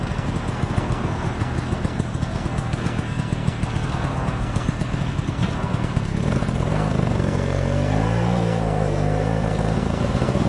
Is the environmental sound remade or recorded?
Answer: remade